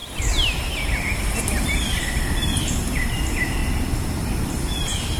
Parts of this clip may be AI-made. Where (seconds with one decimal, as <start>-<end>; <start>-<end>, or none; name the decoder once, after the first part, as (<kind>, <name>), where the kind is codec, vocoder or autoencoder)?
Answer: 3.6-4.6 (vocoder, BigVGAN v2)